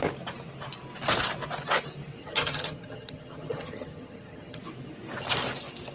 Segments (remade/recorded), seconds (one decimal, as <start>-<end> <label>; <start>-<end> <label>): 0.0-2.2 recorded; 2.2-4.6 remade; 4.6-5.9 recorded